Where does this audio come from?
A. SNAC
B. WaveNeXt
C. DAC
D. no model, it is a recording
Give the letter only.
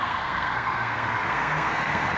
A